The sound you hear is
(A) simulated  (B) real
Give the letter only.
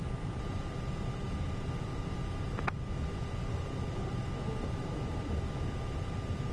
B